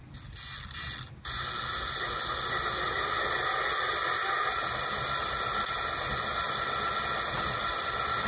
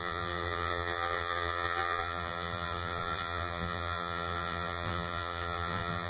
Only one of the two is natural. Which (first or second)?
first